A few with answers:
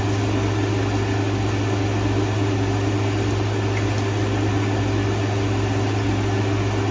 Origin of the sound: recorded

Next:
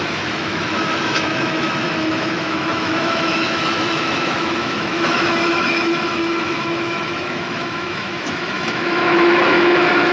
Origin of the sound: remade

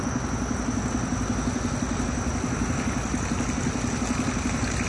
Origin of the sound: recorded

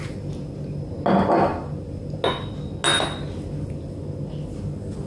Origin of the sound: recorded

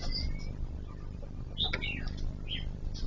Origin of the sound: recorded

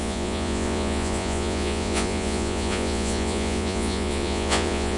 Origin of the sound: remade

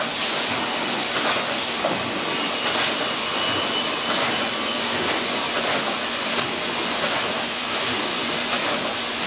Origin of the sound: remade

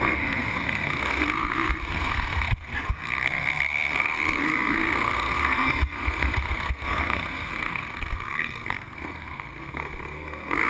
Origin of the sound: remade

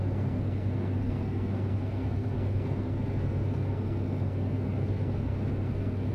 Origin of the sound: remade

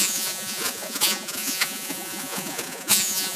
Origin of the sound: remade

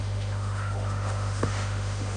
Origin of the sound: remade